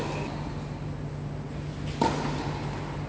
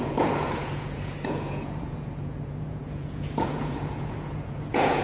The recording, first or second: first